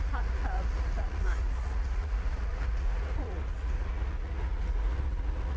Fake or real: fake